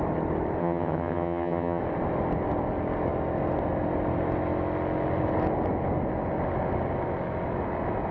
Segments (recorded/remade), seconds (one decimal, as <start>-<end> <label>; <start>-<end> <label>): 0.0-0.6 recorded; 0.6-1.8 remade; 1.8-8.1 recorded